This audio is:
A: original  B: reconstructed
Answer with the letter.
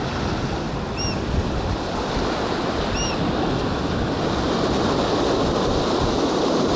A